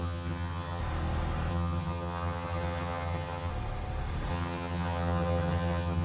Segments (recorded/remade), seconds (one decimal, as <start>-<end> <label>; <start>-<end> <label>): 0.0-0.8 remade; 0.8-1.5 recorded; 1.5-3.5 remade; 3.5-4.3 recorded; 4.3-6.0 remade